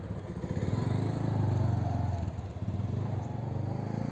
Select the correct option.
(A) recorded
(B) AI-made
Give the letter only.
A